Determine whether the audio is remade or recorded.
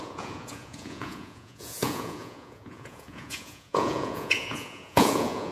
remade